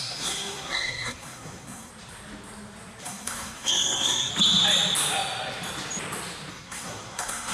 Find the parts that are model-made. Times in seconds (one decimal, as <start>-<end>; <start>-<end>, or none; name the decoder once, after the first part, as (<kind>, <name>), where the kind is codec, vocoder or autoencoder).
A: 0.0-1.9 (codec, SNAC); 3.0-4.3; 6.5-7.5